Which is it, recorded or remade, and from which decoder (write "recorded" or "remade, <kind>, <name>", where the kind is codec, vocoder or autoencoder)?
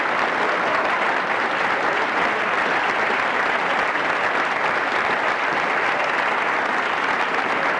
recorded